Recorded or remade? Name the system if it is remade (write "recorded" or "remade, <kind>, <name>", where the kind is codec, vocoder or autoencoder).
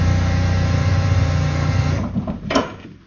remade, vocoder, BigVGAN v2